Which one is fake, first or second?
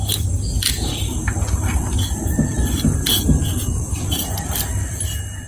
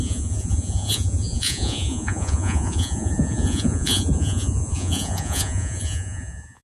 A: second